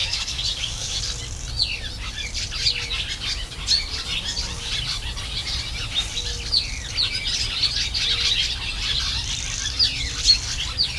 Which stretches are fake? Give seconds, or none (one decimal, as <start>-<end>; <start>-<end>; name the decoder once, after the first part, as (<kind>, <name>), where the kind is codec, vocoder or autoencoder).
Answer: 0.0-1.0 (codec, DAC)